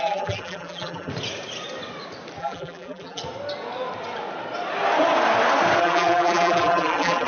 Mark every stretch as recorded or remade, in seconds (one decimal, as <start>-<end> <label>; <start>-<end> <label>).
0.0-1.1 remade; 1.1-2.4 recorded; 2.4-3.2 remade; 3.2-5.8 recorded; 5.8-7.3 remade